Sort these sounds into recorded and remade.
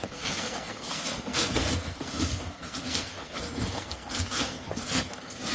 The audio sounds remade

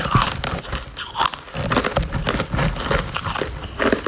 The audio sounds remade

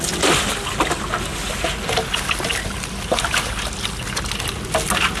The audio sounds recorded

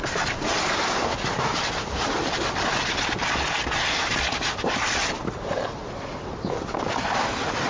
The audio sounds recorded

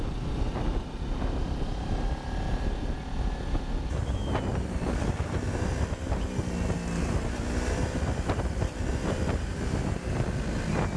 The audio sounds recorded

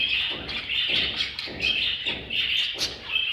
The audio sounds recorded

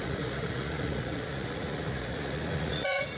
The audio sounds remade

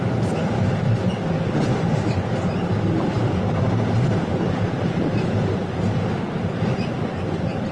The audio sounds recorded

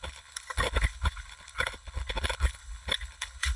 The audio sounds remade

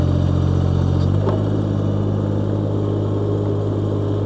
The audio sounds recorded